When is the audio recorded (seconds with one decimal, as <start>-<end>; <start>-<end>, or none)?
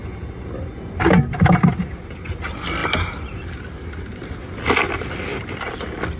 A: 0.0-6.2